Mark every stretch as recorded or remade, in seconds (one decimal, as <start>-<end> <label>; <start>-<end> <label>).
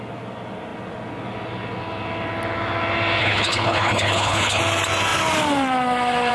0.0-3.2 recorded; 3.2-4.6 remade; 4.6-6.3 recorded